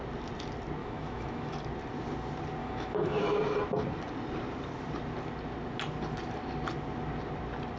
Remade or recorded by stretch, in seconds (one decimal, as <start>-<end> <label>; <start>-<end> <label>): 0.0-0.8 recorded; 0.8-1.5 remade; 1.5-2.6 recorded; 2.6-3.4 remade; 3.4-7.8 recorded